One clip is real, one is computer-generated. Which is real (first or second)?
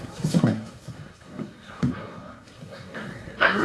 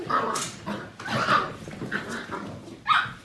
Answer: second